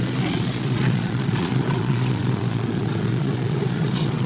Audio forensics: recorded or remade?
remade